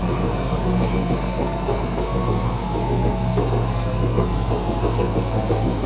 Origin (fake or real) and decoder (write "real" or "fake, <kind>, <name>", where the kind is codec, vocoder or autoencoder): fake, codec, SNAC